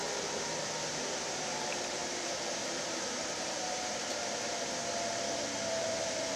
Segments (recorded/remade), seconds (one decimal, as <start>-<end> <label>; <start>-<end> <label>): 0.0-0.9 recorded; 0.9-4.8 remade; 4.8-5.7 recorded; 5.7-6.4 remade

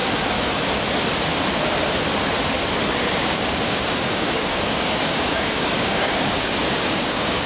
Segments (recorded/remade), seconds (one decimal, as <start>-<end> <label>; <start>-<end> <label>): 0.0-3.2 recorded; 3.2-7.5 remade

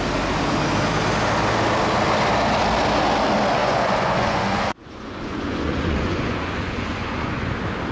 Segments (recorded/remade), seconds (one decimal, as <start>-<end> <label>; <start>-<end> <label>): 0.0-3.6 recorded; 3.6-7.5 remade; 7.5-7.9 recorded

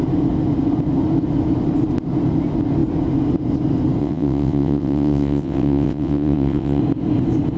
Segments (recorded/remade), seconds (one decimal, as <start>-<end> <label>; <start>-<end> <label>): 0.0-4.0 recorded; 4.0-6.8 remade; 6.8-7.6 recorded

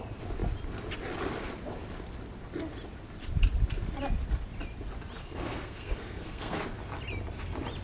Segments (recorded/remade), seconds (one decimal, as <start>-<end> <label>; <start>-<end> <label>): 0.0-5.2 recorded; 5.2-6.6 remade; 6.6-7.8 recorded